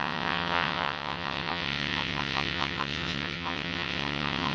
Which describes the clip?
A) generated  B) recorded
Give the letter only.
A